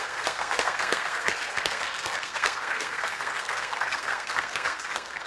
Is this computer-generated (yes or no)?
yes